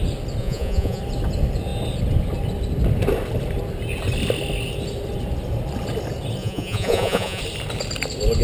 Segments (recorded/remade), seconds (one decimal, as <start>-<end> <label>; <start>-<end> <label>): 0.0-0.4 recorded; 0.4-1.0 remade; 1.0-6.4 recorded; 6.4-7.4 remade; 7.4-8.4 recorded